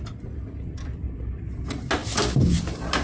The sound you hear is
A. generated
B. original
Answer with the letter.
B